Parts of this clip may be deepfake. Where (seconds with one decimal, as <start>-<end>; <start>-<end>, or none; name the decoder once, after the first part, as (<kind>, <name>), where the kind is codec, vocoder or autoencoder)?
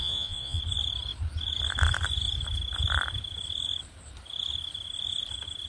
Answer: 0.0-0.6 (vocoder, Vocos)